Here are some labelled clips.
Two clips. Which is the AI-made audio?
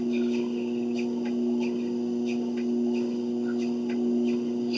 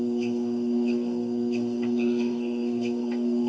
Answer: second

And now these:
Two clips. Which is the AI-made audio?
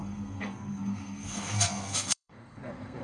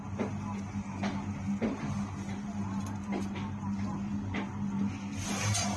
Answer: first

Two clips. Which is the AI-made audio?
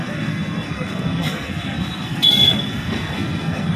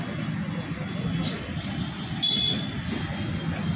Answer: first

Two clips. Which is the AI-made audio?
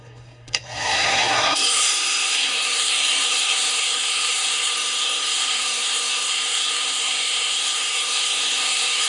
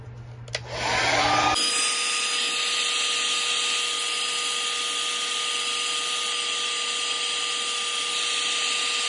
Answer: first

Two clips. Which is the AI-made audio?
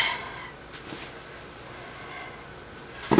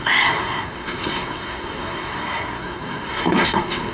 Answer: second